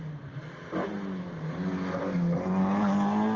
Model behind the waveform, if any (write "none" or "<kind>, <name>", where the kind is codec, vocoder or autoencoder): none